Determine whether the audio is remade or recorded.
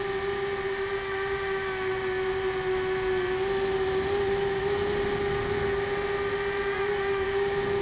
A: recorded